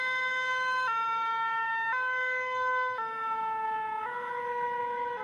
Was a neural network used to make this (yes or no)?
yes